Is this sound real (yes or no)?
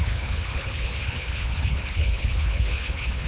no